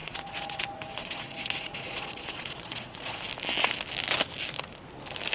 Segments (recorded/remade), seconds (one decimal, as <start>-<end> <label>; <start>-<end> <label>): 0.0-3.2 remade; 3.2-5.3 recorded